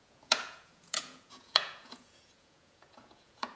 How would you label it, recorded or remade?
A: remade